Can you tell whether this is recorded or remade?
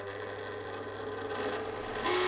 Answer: recorded